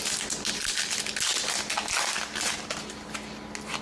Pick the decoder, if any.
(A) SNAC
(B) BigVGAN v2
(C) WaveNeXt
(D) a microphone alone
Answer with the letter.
D